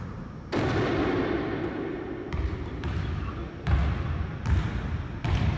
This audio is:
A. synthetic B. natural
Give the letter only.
A